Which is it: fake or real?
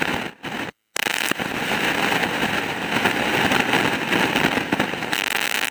real